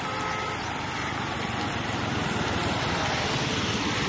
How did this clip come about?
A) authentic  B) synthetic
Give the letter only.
A